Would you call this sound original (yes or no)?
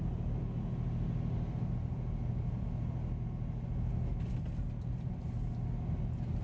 yes